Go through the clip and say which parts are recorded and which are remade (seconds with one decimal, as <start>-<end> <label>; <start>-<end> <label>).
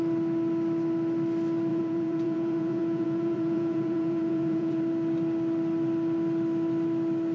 0.0-1.7 recorded; 1.7-4.8 remade; 4.8-7.3 recorded